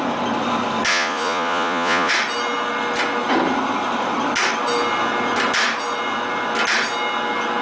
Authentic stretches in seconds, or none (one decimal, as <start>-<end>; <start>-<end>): 0.0-0.9; 2.1-7.6